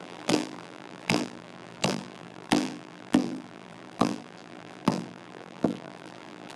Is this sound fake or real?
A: fake